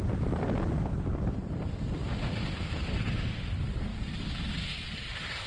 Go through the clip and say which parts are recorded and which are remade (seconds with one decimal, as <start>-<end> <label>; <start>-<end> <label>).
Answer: 0.0-0.9 remade; 0.9-1.6 recorded; 1.6-2.0 remade; 2.0-3.0 recorded; 3.0-3.9 remade; 3.9-4.5 recorded; 4.5-5.5 remade